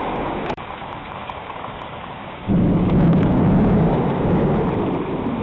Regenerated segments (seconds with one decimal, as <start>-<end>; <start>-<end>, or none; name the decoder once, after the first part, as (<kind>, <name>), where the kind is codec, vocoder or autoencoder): 0.0-4.4 (codec, DAC)